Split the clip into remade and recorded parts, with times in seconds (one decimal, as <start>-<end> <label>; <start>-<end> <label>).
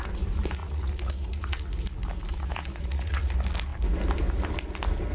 0.0-0.6 recorded; 0.6-1.6 remade; 1.6-2.3 recorded; 2.3-3.3 remade; 3.3-5.1 recorded